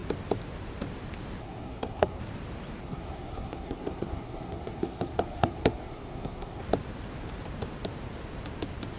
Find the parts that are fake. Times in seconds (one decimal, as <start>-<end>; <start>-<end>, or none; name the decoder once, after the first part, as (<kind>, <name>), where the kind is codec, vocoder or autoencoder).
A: 1.4-2.2 (codec, SNAC); 2.8-6.6